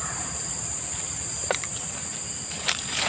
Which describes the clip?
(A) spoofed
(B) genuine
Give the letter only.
A